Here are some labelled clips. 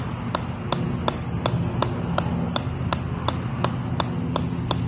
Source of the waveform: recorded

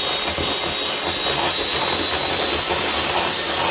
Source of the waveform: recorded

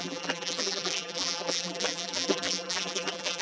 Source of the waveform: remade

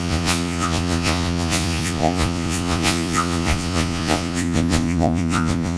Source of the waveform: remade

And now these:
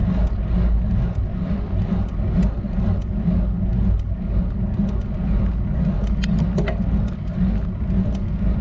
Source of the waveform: recorded